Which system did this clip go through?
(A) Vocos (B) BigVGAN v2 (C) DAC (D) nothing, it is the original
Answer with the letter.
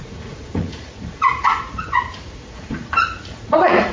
A